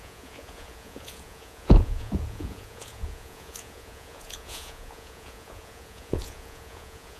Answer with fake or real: fake